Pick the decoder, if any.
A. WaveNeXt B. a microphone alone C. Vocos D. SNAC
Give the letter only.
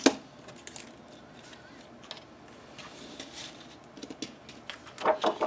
B